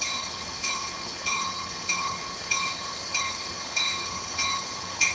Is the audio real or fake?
fake